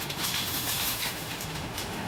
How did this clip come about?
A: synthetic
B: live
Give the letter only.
A